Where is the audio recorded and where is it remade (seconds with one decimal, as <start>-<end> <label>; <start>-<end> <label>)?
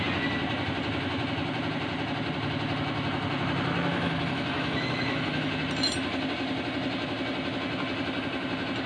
0.0-3.9 recorded; 3.9-5.5 remade; 5.5-8.9 recorded